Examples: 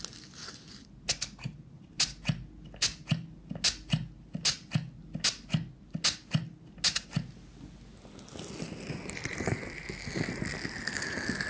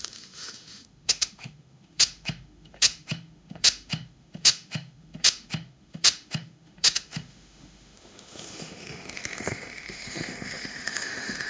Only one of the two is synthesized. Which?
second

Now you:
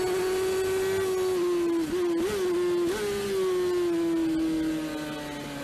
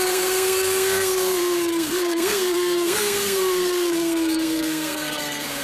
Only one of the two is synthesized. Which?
second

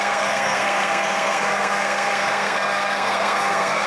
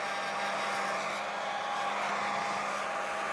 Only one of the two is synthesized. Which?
first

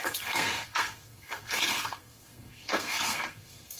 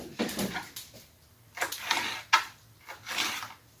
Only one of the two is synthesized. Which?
first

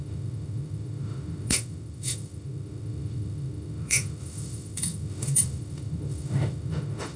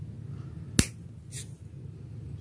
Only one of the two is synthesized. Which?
first